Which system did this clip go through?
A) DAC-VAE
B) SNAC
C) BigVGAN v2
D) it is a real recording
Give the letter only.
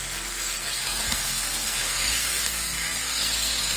B